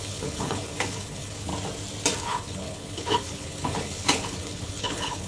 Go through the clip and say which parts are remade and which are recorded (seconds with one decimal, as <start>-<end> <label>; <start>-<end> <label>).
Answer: 0.0-1.5 remade; 1.5-2.2 recorded; 2.2-5.3 remade